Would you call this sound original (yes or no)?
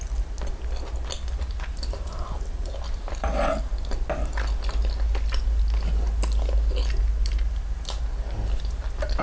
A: yes